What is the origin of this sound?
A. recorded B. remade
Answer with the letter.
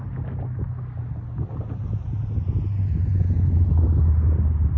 A